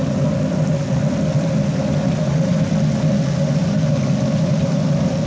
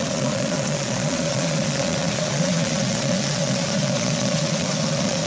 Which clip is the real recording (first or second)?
first